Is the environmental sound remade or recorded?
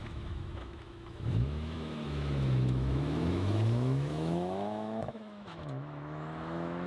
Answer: remade